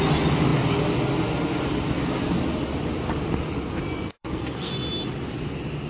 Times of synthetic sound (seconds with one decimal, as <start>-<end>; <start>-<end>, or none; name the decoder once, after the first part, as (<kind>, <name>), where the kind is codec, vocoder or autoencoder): 4.1-4.7 (codec, SNAC)

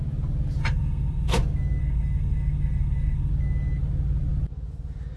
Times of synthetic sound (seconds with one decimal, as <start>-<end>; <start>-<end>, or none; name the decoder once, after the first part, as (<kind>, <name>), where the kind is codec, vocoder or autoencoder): 0.6-1.3 (codec, SNAC); 1.8-3.3

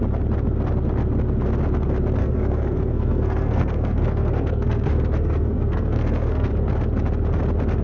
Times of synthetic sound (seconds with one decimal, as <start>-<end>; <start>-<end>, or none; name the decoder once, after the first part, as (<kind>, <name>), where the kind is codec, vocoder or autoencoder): 2.2-6.5 (codec, SNAC)

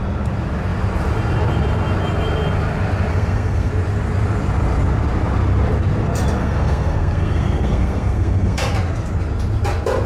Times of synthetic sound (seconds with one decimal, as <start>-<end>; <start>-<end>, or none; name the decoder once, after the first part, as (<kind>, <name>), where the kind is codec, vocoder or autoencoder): 3.1-3.7 (codec, SNAC); 6.4-8.6

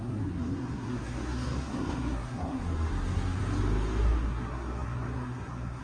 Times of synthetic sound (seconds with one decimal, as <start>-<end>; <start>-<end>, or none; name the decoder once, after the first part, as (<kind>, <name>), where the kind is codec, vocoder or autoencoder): 0.0-3.4 (codec, SNAC); 4.0-5.8

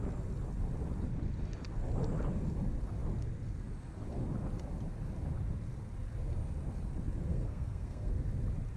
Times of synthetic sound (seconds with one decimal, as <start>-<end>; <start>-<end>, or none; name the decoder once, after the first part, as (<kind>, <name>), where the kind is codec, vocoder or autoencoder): 7.3-8.1 (codec, SNAC)